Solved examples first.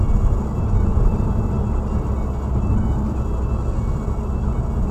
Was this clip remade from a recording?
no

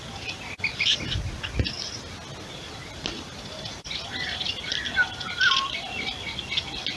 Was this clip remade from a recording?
no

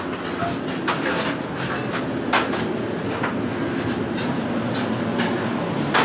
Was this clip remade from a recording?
no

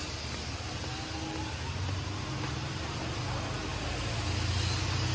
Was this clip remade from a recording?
no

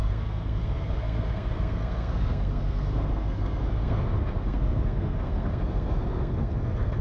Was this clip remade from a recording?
yes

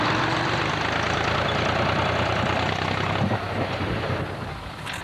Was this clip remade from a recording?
no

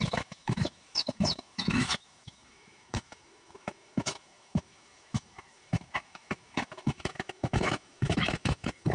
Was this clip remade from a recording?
yes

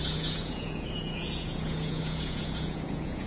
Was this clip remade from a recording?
yes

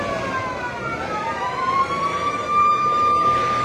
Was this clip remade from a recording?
yes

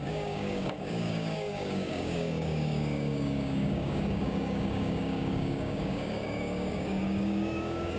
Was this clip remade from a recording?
yes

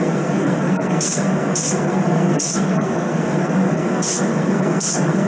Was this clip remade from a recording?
yes